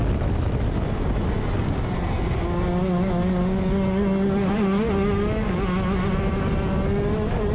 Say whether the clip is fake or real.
real